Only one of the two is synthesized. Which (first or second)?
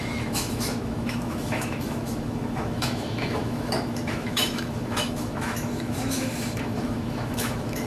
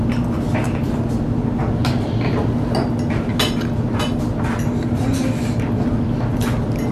first